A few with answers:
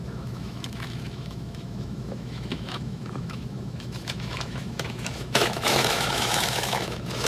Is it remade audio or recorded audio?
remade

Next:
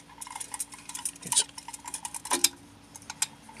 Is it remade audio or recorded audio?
recorded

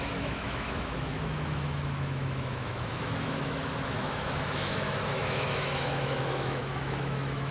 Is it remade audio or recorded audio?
remade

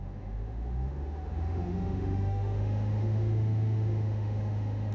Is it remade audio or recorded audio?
remade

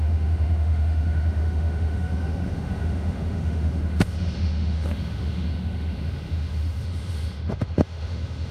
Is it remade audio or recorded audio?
remade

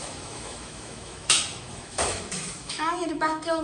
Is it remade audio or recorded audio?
remade